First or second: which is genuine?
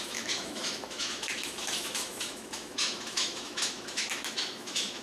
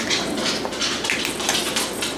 second